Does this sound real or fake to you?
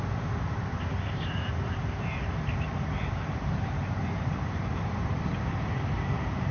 fake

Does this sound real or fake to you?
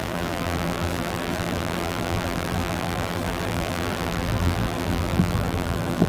fake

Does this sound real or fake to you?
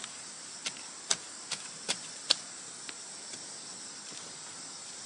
fake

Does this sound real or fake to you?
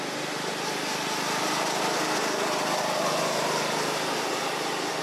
real